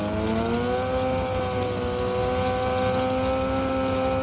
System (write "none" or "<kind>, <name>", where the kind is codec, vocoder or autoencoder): none